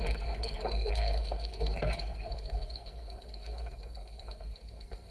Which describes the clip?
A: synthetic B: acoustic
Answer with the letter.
A